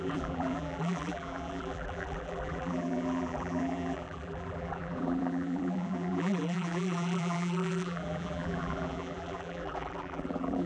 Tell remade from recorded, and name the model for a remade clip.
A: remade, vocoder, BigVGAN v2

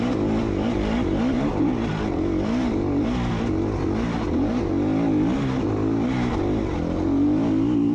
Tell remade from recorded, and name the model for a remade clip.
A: recorded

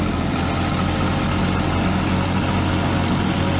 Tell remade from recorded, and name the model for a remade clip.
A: recorded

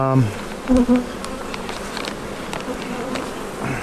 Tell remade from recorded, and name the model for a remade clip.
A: recorded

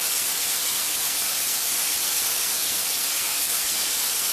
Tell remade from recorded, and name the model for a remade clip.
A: remade, codec, SNAC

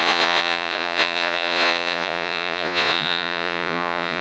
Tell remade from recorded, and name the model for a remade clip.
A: remade, vocoder, Vocos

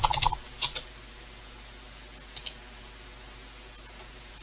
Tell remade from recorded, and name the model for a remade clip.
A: recorded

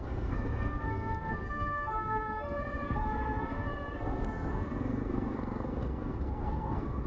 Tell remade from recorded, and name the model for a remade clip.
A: remade, codec, SNAC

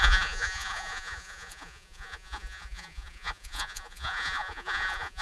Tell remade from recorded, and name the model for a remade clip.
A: remade, vocoder, Vocos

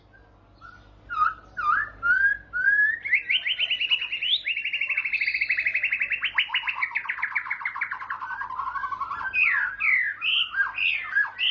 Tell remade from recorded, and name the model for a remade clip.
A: recorded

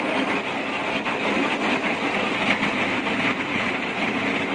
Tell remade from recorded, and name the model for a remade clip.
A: recorded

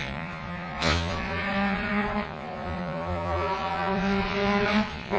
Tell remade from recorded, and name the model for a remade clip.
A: remade, vocoder, Vocos